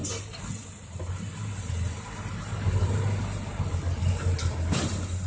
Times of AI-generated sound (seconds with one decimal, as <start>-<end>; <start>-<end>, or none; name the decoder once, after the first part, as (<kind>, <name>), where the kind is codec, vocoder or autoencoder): none